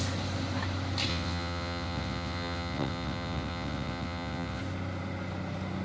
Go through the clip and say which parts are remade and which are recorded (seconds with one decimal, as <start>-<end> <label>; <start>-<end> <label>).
0.0-1.1 recorded; 1.1-4.6 remade; 4.6-5.8 recorded